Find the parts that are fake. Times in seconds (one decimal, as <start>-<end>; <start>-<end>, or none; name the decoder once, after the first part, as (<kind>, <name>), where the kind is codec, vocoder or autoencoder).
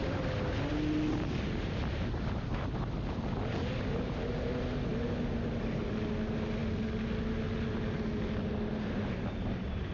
none